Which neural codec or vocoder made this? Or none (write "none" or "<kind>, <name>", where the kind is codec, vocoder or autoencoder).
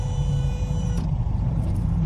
vocoder, BigVGAN v2